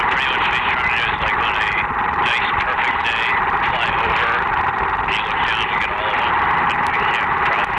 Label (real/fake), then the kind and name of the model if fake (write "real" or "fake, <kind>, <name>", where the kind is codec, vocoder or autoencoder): real